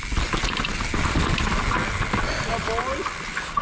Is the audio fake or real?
real